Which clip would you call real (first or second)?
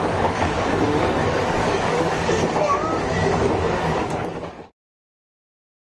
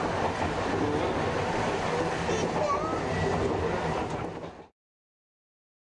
second